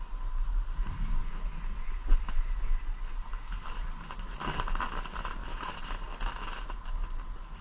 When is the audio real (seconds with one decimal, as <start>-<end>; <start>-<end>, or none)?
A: 0.0-5.4; 6.2-7.6